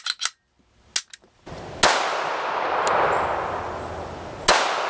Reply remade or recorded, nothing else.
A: recorded